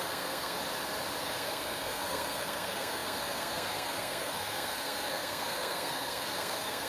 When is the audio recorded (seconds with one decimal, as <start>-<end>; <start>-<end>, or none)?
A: 0.6-1.2